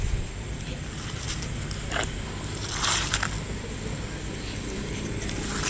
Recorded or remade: recorded